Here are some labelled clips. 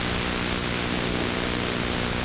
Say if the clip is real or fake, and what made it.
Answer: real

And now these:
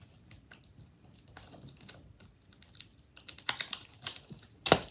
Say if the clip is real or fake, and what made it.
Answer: real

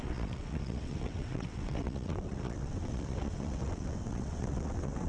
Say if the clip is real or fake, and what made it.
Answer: fake, vocoder, WaveNeXt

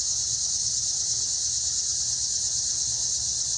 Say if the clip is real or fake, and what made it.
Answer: real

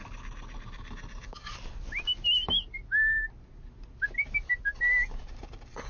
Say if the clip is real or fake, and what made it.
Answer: real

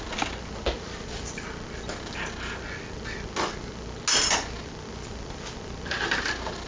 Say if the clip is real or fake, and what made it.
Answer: real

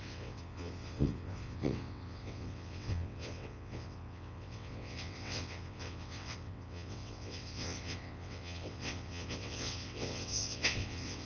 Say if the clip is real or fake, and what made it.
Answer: fake, vocoder, WaveNeXt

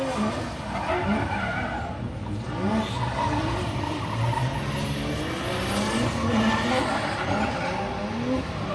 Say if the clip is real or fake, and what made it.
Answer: real